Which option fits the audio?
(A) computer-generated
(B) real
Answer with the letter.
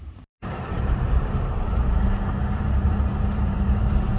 A